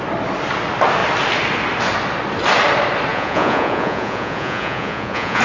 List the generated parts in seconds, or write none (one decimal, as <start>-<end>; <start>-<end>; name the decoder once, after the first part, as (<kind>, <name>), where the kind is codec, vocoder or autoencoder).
3.1-5.4 (vocoder, Vocos)